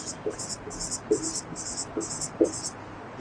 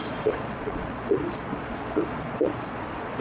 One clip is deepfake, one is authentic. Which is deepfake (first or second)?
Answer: second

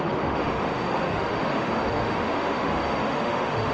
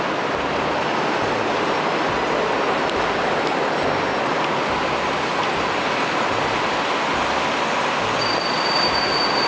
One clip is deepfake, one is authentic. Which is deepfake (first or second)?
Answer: first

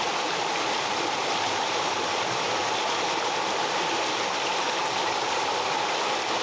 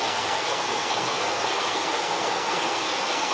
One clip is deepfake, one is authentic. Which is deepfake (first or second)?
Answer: second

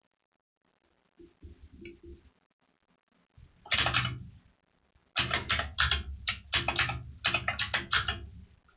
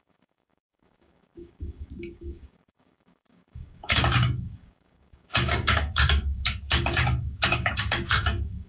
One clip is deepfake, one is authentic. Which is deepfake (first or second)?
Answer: second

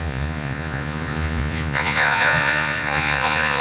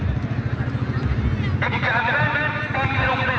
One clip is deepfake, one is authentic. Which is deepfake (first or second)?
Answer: first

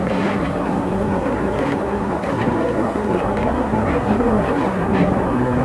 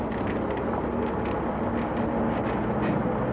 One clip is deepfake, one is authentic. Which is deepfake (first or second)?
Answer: first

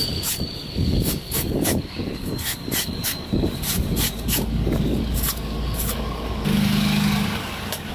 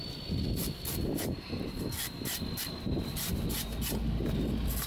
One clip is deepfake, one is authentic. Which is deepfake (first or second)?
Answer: first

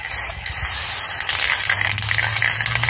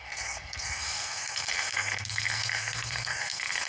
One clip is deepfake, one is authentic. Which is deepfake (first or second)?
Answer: second